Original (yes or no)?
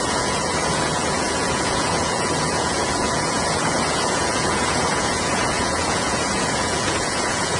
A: no